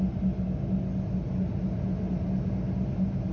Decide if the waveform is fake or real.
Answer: real